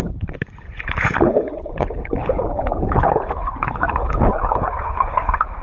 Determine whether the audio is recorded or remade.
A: remade